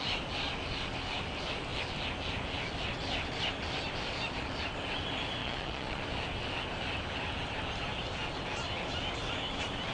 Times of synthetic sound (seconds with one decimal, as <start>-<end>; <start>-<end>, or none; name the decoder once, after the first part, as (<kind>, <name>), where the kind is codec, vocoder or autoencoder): 5.4-6.0 (vocoder, Vocos)